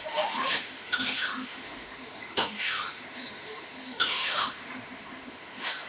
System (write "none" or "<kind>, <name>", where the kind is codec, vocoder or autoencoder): autoencoder, DAC-VAE